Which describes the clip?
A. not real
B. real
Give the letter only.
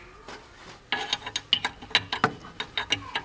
B